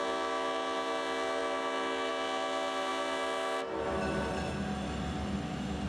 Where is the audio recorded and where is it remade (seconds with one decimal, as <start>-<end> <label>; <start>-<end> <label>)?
0.0-5.9 recorded